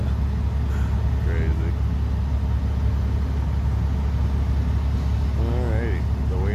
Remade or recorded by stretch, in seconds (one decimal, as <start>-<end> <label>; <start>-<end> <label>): 0.0-6.5 recorded